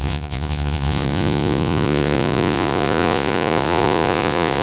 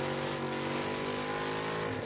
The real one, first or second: second